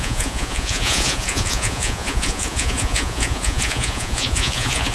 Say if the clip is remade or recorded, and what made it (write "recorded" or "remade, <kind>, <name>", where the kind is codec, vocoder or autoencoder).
remade, vocoder, Vocos